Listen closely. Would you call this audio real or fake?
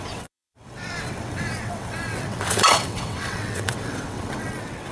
fake